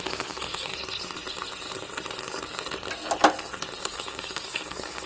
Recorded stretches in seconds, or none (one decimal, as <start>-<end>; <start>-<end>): 0.7-3.8

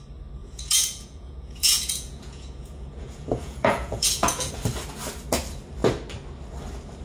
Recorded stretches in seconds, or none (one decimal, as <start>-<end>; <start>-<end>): 0.0-0.4; 4.5-7.0

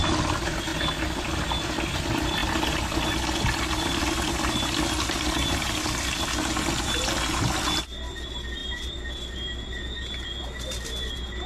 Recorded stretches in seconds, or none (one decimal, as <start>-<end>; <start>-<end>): 0.0-8.6; 9.1-11.5

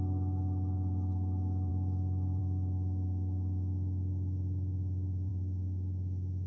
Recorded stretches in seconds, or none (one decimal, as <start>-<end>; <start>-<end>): 1.7-2.4

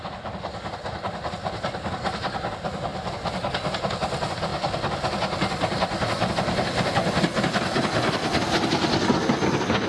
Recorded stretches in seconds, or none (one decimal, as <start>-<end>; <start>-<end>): 0.0-9.9

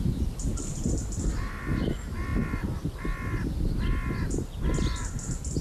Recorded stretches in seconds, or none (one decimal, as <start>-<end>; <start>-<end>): 0.0-0.5; 1.3-5.6

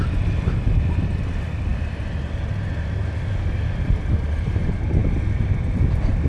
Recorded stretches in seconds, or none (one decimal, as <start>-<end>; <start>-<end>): 0.0-6.3